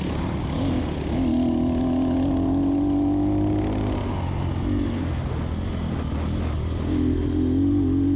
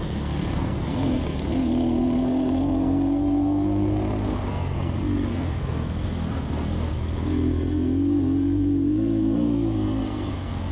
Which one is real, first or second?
first